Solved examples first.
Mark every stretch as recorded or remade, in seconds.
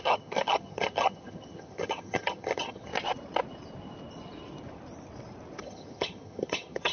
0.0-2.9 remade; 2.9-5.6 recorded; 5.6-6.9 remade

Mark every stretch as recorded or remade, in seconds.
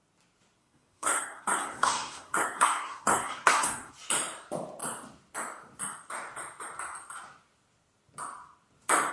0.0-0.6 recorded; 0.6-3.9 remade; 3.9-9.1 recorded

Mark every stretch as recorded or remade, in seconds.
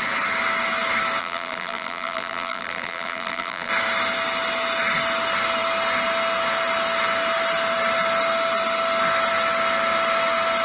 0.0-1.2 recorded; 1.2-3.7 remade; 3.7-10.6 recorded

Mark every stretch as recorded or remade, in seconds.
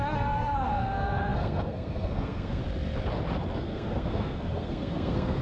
0.0-2.6 remade; 2.6-3.5 recorded; 3.5-5.4 remade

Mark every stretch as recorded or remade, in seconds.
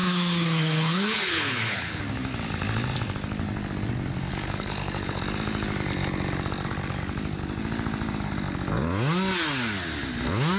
0.0-2.0 remade; 2.0-4.3 recorded; 4.3-5.2 remade; 5.2-10.6 recorded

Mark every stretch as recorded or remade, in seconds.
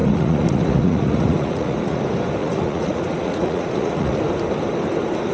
0.0-2.0 remade; 2.0-2.4 recorded; 2.4-4.2 remade; 4.2-5.3 recorded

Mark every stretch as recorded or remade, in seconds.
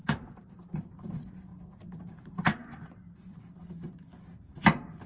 0.0-1.5 remade; 1.5-2.1 recorded; 2.1-5.1 remade